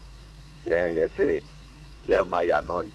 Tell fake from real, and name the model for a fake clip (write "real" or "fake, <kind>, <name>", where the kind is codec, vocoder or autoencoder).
fake, codec, SNAC